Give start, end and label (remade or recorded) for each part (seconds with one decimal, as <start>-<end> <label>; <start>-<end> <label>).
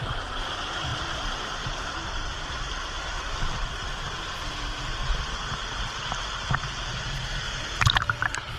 0.0-0.9 recorded; 0.9-3.2 remade; 3.2-8.6 recorded